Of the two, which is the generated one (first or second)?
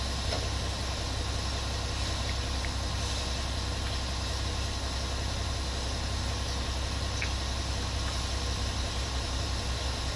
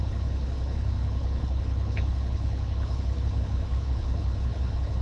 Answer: second